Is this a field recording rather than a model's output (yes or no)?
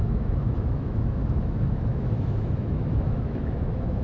no